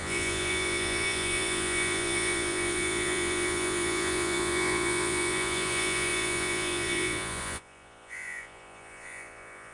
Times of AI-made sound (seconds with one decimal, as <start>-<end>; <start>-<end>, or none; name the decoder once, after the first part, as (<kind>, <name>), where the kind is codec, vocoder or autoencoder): 0.0-9.7 (vocoder, Vocos)